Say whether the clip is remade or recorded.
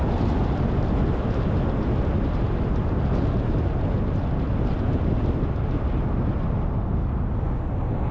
recorded